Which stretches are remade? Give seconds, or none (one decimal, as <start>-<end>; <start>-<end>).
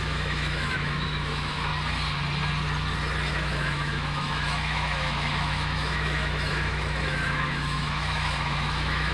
0.0-1.7; 3.3-9.1